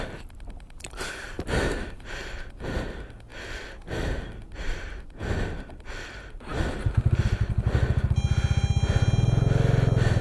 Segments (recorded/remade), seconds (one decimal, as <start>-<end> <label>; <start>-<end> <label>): 0.0-10.2 recorded